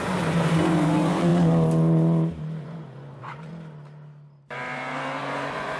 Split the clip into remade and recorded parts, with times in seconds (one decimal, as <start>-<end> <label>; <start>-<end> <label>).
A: 0.0-1.3 remade; 1.3-2.6 recorded; 2.6-3.5 remade; 3.5-5.2 recorded; 5.2-5.8 remade